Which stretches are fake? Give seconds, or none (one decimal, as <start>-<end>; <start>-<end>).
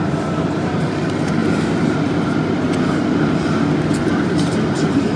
0.0-1.4; 4.0-5.2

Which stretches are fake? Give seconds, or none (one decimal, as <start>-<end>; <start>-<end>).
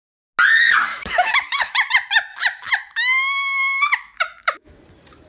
0.9-1.9; 2.3-4.8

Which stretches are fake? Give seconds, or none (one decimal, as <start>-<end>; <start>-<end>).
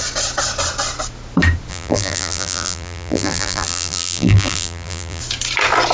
1.7-5.2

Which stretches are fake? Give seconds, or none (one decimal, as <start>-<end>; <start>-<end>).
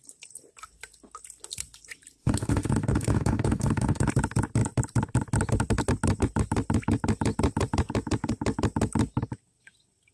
2.2-4.1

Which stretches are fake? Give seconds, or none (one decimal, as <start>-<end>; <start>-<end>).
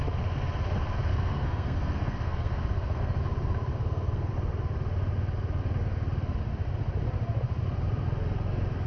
1.1-3.2; 3.7-4.3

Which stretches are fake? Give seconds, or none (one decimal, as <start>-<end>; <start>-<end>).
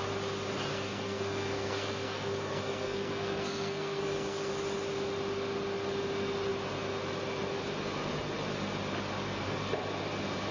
0.7-4.5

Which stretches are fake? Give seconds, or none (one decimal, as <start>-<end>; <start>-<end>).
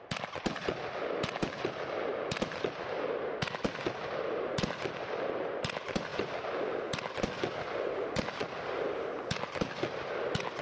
none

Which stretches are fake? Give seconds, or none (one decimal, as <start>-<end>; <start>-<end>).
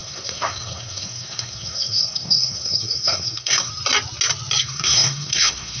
0.0-3.7; 4.6-5.8